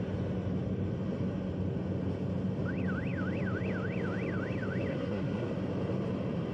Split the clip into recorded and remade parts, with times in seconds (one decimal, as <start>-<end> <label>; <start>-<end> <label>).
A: 0.0-4.9 recorded; 4.9-5.5 remade; 5.5-6.5 recorded